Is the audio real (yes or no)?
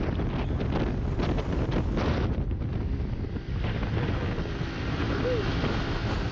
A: yes